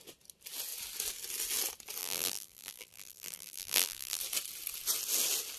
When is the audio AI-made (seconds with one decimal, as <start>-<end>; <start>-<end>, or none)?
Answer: 2.0-4.2